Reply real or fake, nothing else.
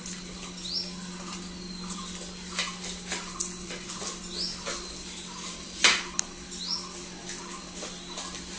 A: real